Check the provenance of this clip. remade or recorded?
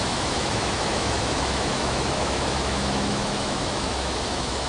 remade